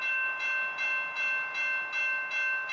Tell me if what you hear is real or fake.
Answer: real